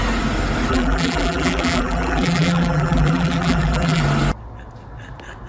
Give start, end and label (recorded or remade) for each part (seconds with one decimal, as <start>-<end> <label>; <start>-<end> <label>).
0.0-0.7 recorded; 0.7-4.0 remade; 4.0-5.5 recorded